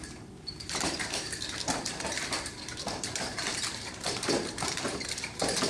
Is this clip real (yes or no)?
no